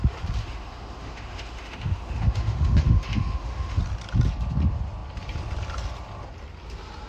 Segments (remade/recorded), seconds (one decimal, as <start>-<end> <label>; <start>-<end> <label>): 0.0-0.4 recorded; 0.4-3.8 remade; 3.8-7.1 recorded